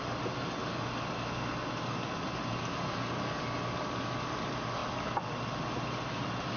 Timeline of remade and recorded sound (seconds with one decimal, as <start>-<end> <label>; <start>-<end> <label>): 0.0-6.6 recorded